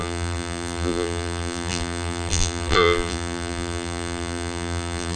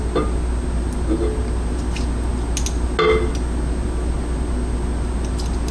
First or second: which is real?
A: second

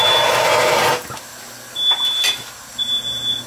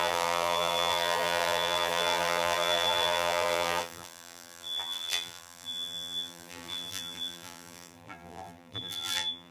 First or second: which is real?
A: first